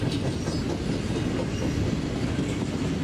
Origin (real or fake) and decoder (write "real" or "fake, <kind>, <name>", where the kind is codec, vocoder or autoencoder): real